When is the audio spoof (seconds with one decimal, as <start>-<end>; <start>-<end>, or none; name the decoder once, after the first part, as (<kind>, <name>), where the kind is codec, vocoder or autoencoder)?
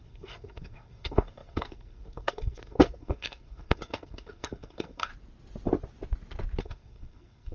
0.0-5.1 (codec, SNAC); 6.6-7.5